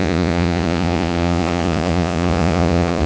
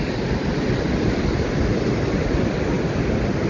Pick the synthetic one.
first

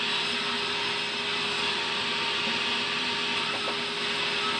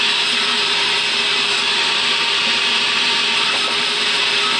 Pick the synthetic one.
second